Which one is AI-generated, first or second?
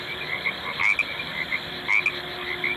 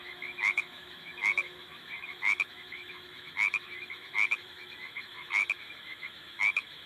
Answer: second